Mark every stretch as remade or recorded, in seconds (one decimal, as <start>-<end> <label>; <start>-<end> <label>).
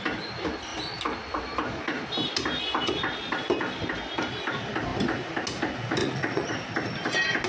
0.0-6.0 recorded; 6.0-6.5 remade; 6.5-7.5 recorded